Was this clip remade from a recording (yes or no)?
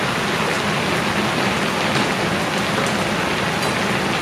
no